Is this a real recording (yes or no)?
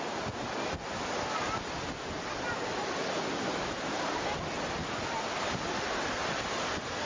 yes